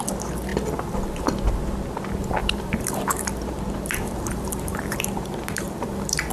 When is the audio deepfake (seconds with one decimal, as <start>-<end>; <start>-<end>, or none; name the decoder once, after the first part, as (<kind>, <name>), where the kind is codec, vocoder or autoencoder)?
2.4-6.3 (vocoder, BigVGAN v2)